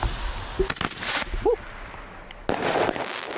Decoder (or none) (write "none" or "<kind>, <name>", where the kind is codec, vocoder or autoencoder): none